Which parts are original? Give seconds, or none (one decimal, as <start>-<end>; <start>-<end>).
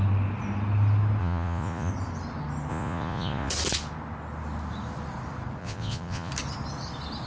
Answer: 0.0-1.2; 1.9-2.7; 3.5-5.6; 6.3-7.3